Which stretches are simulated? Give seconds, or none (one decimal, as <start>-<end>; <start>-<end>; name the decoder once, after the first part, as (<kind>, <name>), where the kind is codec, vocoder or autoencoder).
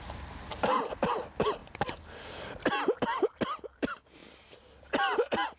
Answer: none